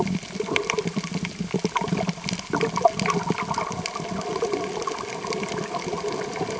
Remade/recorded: recorded